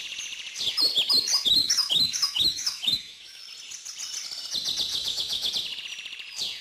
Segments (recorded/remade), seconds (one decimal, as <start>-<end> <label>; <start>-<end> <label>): 0.0-1.6 recorded; 1.6-3.4 remade; 3.4-4.9 recorded; 4.9-5.5 remade; 5.5-6.6 recorded